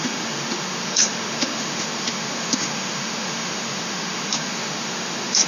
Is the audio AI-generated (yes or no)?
yes